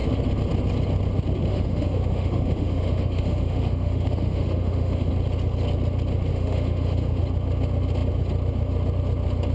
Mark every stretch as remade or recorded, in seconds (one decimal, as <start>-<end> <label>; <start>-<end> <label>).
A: 0.0-1.5 recorded; 1.5-5.1 remade; 5.1-6.3 recorded; 6.3-7.2 remade; 7.2-9.5 recorded